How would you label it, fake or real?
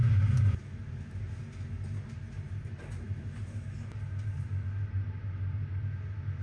real